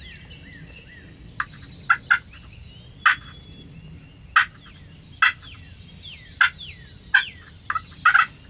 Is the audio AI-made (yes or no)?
no